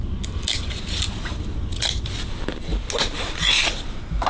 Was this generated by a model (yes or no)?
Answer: no